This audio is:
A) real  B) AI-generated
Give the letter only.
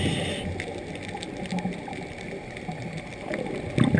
A